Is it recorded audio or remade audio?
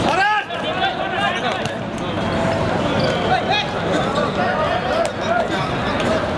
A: recorded